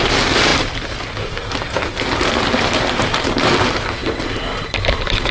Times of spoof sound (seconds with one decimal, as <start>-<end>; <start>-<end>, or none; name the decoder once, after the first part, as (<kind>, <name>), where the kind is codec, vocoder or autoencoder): none